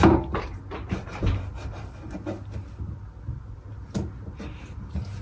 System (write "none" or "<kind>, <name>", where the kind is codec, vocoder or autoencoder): none